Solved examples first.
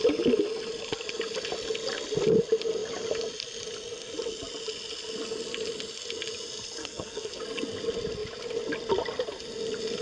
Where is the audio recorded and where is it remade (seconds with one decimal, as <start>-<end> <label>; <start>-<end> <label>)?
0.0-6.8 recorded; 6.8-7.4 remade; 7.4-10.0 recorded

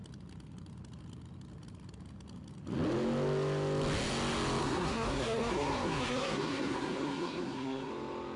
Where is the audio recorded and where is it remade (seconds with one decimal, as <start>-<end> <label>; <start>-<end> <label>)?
0.0-4.6 recorded; 4.6-7.9 remade; 7.9-8.4 recorded

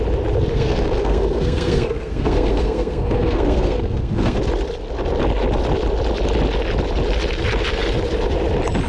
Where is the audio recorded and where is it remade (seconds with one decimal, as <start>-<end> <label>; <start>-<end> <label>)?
0.0-0.5 recorded; 0.5-4.4 remade; 4.4-8.9 recorded

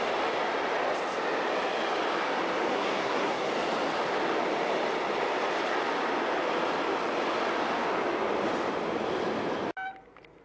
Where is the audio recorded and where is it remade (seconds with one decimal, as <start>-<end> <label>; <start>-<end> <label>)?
0.0-2.7 recorded; 2.7-3.5 remade; 3.5-10.4 recorded

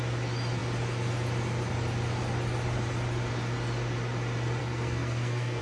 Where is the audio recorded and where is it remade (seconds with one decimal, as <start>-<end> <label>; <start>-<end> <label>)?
0.0-4.6 recorded; 4.6-5.6 remade